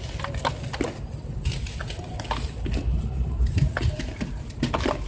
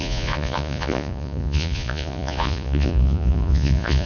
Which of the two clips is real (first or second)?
first